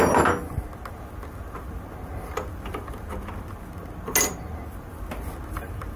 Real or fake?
real